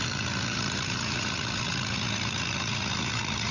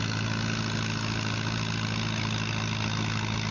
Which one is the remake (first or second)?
first